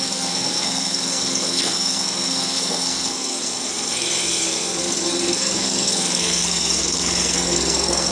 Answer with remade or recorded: remade